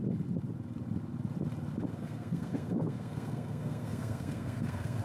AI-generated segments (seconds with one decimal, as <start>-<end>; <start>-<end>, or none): 1.9-5.0